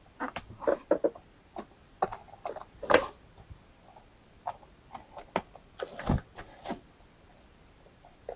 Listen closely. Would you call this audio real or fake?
real